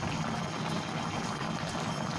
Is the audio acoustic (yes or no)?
yes